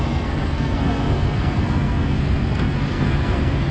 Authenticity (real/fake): fake